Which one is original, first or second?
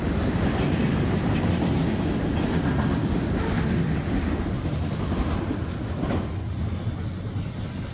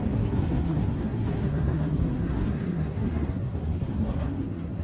first